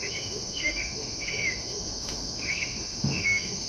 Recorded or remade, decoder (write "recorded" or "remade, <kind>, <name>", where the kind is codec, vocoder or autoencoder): remade, autoencoder, DAC-VAE